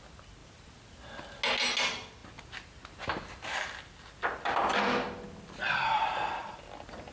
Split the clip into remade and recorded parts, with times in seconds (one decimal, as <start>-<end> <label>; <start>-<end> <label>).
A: 0.0-7.1 recorded